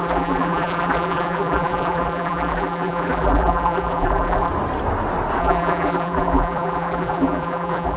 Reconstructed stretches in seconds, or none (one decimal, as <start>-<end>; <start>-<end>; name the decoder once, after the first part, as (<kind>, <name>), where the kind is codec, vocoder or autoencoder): 0.0-4.5 (vocoder, BigVGAN v2); 5.4-8.0